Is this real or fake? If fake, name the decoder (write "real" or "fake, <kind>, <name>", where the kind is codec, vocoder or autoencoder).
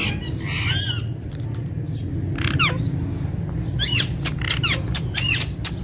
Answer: real